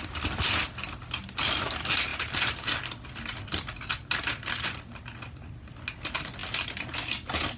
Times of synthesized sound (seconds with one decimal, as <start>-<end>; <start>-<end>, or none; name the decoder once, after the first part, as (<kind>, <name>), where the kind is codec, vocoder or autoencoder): none

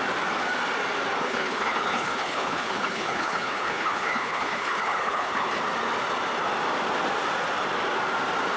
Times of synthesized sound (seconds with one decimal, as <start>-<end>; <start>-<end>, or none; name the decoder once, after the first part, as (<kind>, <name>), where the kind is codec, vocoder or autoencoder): 1.2-5.6 (codec, HILCodec)

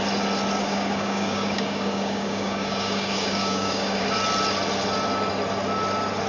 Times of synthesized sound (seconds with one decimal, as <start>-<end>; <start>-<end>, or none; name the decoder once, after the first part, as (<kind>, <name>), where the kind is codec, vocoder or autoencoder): 0.6-4.0 (codec, DAC)

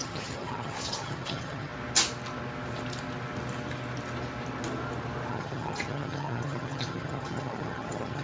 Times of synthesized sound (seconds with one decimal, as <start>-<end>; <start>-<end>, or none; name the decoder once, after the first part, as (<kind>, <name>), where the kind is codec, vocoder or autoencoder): 0.0-1.7 (vocoder, HiFi-GAN); 5.3-8.2